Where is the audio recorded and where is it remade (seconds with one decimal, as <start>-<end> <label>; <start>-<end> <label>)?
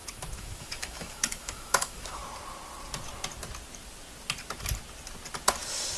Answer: 0.0-2.2 remade; 2.2-6.0 recorded